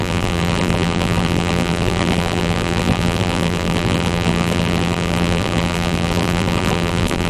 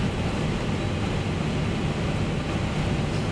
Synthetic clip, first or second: first